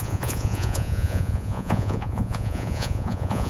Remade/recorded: remade